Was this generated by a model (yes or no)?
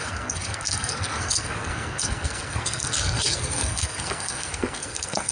yes